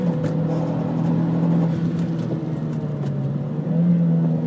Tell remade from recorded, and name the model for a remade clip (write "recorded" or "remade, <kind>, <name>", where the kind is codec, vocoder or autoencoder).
recorded